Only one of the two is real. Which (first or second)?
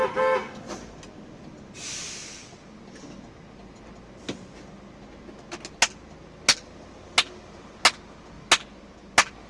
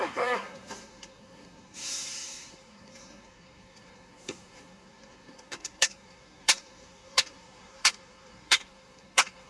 first